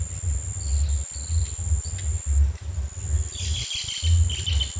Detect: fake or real real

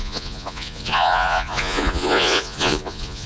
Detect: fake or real fake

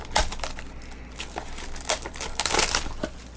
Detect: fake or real real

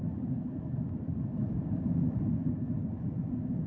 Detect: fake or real real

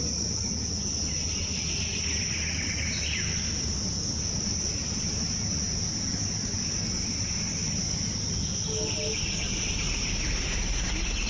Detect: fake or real real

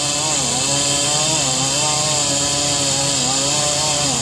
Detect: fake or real real